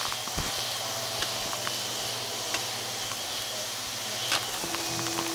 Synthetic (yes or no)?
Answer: no